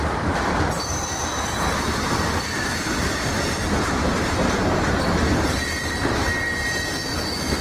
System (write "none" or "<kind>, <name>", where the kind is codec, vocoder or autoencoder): vocoder, BigVGAN v2